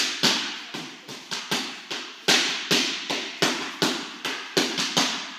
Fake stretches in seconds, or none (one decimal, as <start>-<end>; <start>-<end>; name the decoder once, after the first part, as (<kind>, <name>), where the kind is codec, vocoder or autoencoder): none